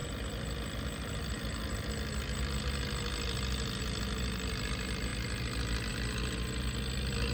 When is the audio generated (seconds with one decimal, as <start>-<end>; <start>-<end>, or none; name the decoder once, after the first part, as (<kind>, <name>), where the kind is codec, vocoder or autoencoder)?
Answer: none